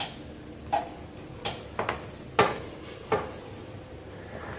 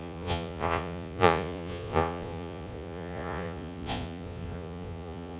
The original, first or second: first